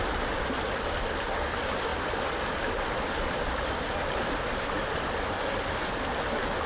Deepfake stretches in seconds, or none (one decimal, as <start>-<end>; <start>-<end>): none